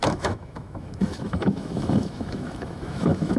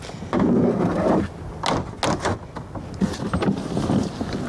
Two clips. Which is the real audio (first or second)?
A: second